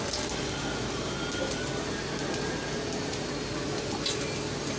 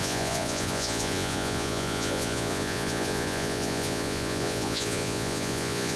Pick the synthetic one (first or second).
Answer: second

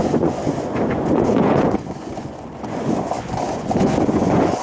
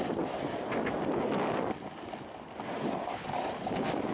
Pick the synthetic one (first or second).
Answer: first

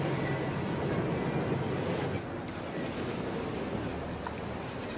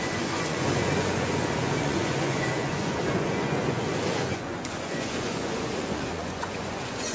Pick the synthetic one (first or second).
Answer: second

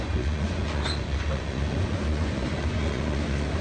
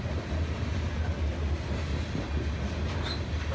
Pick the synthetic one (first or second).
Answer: first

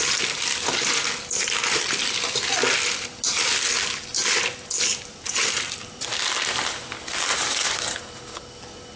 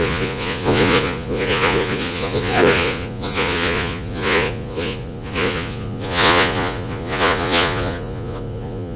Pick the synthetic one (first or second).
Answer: second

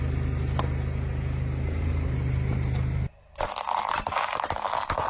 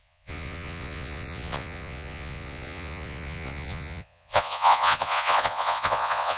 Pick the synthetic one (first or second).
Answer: second